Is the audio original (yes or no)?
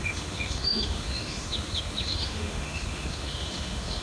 no